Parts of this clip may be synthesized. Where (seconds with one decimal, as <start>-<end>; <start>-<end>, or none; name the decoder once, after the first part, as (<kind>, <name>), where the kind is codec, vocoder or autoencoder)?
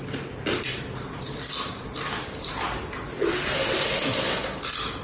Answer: none